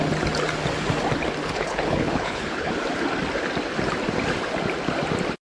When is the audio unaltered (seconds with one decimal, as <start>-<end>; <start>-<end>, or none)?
0.0-1.4; 2.7-5.4